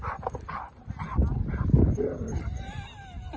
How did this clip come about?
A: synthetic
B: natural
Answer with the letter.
B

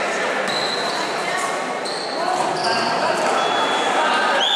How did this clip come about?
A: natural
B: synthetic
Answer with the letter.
A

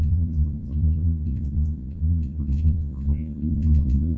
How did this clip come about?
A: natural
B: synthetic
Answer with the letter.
B